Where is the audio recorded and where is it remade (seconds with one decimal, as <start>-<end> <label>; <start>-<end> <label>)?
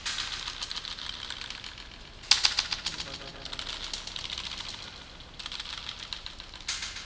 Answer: 0.0-7.0 recorded